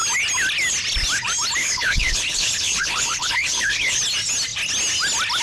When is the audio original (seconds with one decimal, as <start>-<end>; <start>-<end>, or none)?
0.0-1.6; 4.0-5.4